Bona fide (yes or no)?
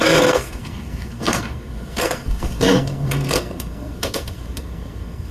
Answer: no